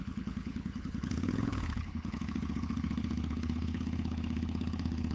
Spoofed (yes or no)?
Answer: yes